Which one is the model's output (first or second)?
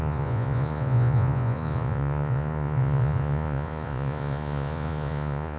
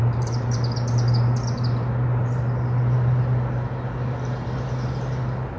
first